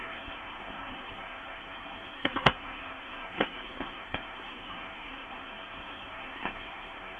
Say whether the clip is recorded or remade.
remade